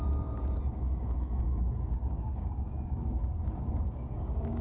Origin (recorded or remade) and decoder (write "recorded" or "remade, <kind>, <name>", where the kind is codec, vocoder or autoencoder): remade, codec, DAC